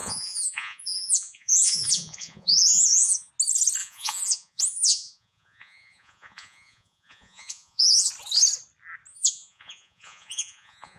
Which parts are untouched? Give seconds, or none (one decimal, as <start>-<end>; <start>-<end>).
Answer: 3.3-3.8; 8.1-9.1